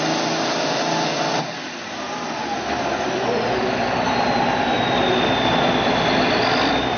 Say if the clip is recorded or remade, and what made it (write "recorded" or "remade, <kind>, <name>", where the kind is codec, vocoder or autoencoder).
recorded